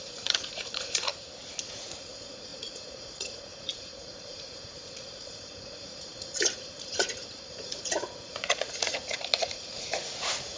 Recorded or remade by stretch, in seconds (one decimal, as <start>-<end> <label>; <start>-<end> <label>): 0.0-1.1 remade; 1.1-1.6 recorded; 1.6-10.6 remade